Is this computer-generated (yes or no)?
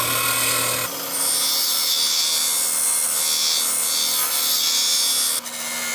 no